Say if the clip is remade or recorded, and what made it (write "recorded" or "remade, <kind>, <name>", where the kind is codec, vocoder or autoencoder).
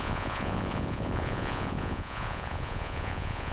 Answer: remade, vocoder, Vocos